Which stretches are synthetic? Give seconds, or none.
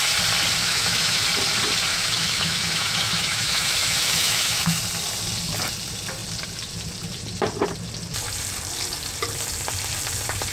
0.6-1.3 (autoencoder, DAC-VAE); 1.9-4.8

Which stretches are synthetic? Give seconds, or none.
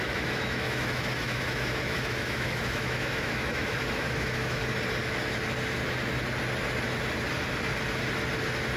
0.0-4.6 (autoencoder, DAC-VAE)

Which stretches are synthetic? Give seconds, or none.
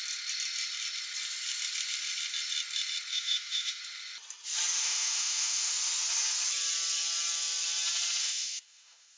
3.1-3.8 (autoencoder, DAC-VAE); 4.8-5.7; 8.2-9.2